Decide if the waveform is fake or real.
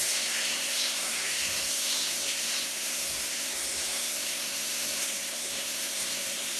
fake